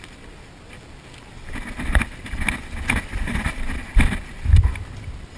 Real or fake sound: real